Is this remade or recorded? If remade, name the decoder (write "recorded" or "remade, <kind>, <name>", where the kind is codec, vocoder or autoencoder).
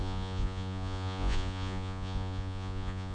remade, vocoder, Vocos